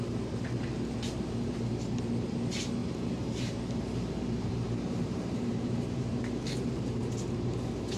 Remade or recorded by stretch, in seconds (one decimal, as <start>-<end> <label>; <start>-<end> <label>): 0.0-2.8 recorded; 2.8-7.0 remade; 7.0-8.0 recorded